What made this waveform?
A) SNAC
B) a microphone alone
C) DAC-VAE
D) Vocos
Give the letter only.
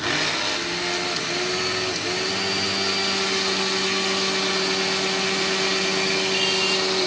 B